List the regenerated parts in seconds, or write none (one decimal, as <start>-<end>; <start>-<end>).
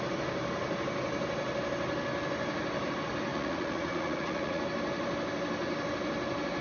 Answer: 3.3-4.6